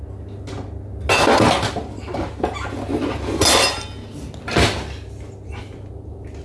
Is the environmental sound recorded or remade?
recorded